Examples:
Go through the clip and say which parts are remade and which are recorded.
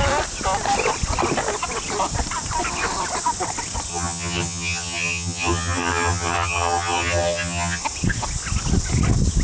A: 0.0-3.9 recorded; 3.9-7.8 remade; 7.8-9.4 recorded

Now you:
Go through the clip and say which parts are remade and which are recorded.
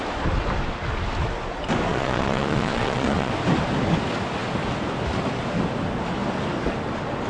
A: 0.0-1.9 recorded; 1.9-3.3 remade; 3.3-7.3 recorded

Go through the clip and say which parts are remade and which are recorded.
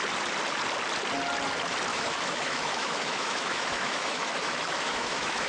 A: 0.0-1.9 recorded; 1.9-5.5 remade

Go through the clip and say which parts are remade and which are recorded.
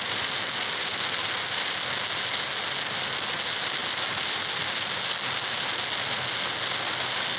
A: 0.0-7.4 recorded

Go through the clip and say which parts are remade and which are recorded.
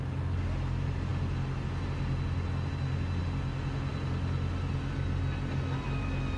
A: 0.0-6.4 recorded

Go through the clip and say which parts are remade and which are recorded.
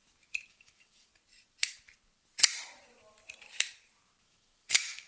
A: 0.0-0.5 recorded; 0.5-1.1 remade; 1.1-4.2 recorded; 4.2-5.1 remade